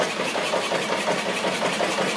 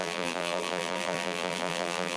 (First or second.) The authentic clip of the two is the first